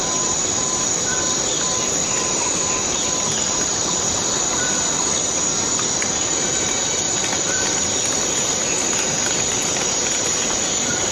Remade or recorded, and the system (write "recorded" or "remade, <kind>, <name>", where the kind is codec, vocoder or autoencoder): remade, vocoder, BigVGAN v2